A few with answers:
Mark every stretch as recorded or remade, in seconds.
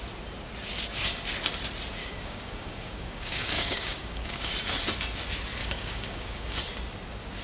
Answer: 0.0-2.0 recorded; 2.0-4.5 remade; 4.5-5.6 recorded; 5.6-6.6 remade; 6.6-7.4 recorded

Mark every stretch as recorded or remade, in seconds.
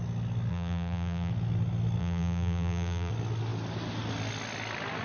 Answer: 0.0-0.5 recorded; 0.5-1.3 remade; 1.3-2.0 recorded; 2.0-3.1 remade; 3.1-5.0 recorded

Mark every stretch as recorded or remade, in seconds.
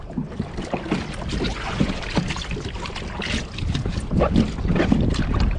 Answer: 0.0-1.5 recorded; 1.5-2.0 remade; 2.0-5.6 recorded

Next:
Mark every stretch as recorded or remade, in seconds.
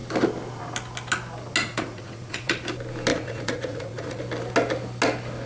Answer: 0.0-1.6 recorded; 1.6-2.6 remade; 2.6-3.1 recorded; 3.1-4.2 remade; 4.2-5.5 recorded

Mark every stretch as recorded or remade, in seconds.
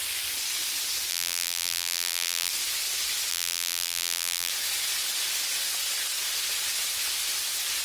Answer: 0.0-1.1 recorded; 1.1-2.5 remade; 2.5-3.3 recorded; 3.3-4.5 remade; 4.5-7.8 recorded